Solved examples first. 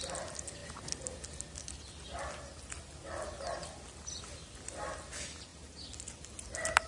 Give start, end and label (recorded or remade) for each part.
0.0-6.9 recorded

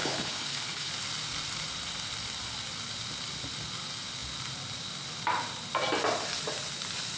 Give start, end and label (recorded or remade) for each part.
0.0-0.9 remade; 0.9-7.2 recorded

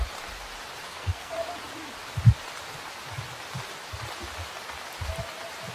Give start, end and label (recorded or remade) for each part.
0.0-0.8 recorded; 0.8-1.3 remade; 1.3-5.7 recorded

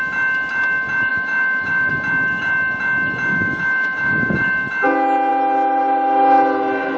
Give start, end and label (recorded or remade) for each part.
0.0-1.1 recorded; 1.1-1.9 remade; 1.9-3.3 recorded; 3.3-4.4 remade; 4.4-7.0 recorded

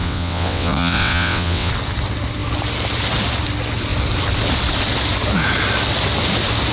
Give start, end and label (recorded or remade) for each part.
0.0-1.7 remade; 1.7-6.7 recorded